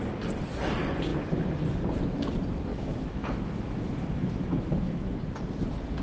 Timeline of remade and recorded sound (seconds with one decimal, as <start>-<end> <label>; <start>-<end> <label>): 0.0-2.7 recorded; 2.7-5.2 remade; 5.2-6.0 recorded